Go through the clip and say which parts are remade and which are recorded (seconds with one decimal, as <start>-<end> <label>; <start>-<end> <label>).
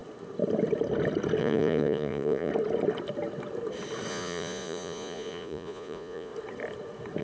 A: 0.0-1.4 recorded; 1.4-2.5 remade; 2.5-4.1 recorded; 4.1-6.3 remade; 6.3-7.2 recorded